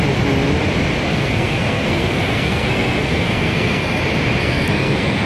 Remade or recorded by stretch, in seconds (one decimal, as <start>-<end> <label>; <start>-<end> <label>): 0.0-1.1 recorded; 1.1-4.0 remade; 4.0-4.4 recorded; 4.4-5.3 remade